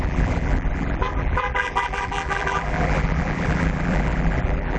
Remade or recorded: remade